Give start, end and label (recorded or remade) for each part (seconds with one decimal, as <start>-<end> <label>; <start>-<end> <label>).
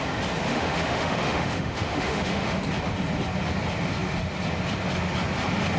0.0-0.5 recorded; 0.5-2.6 remade; 2.6-5.8 recorded